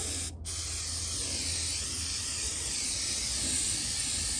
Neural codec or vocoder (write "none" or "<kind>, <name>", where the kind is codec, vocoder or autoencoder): none